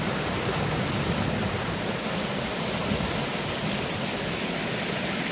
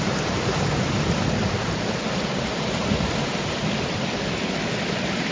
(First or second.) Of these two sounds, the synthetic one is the second